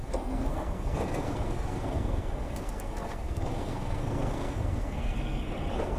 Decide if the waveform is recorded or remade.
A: remade